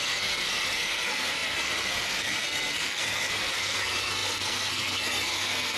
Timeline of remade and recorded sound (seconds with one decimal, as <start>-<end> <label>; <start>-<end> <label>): 0.0-5.8 remade